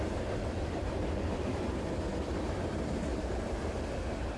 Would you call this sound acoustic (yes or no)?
no